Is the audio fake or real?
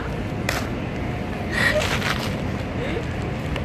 real